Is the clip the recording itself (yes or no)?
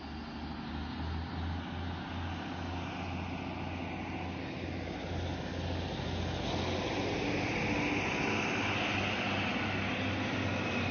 yes